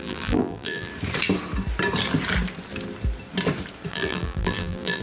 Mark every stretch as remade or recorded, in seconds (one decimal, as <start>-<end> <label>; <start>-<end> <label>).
0.0-0.9 remade; 0.9-3.9 recorded; 3.9-5.0 remade